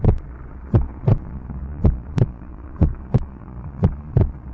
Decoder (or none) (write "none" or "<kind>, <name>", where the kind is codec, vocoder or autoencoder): vocoder, Vocos